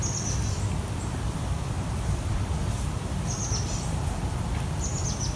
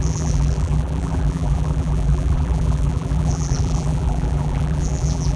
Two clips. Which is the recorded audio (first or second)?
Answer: first